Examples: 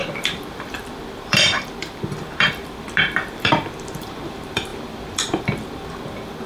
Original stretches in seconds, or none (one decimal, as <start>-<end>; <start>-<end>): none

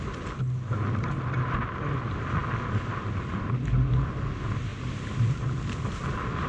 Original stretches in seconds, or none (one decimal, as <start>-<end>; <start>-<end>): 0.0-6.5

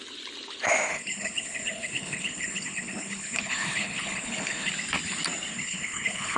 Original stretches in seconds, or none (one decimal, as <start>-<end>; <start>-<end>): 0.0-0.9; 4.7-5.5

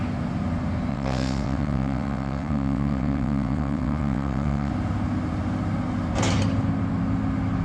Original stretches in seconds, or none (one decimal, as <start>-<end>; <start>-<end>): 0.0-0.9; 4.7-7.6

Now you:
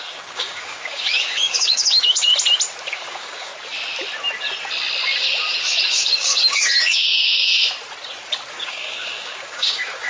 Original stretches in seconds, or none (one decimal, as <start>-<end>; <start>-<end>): 2.3-2.9; 3.5-5.9; 7.5-8.5

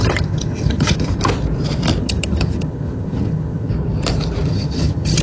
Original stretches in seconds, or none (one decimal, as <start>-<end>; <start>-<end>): 1.2-2.0; 3.7-4.5

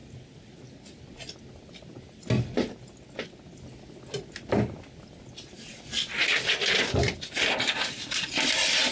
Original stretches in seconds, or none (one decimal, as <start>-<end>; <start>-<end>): 0.0-8.9